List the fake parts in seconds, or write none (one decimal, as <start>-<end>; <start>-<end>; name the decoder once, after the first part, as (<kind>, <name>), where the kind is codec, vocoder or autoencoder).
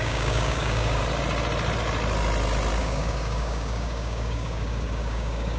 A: 0.0-1.0 (codec, DAC); 2.8-5.6